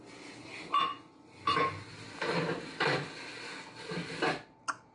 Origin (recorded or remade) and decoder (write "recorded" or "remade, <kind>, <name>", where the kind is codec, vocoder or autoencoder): recorded